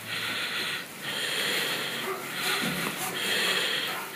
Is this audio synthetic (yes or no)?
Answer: no